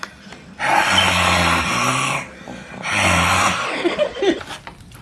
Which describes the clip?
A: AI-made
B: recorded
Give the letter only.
B